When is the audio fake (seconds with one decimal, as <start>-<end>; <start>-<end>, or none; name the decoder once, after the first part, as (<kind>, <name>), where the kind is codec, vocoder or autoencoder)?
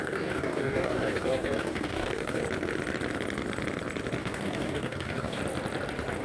0.0-2.4 (codec, DAC); 4.2-5.4